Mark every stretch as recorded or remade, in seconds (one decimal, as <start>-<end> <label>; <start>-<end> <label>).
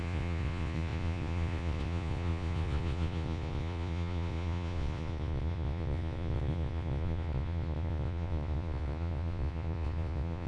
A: 0.0-10.5 remade